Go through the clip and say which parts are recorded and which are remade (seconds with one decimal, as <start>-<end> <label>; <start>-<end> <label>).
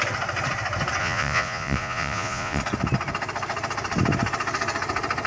0.0-1.0 recorded; 1.0-2.6 remade; 2.6-5.3 recorded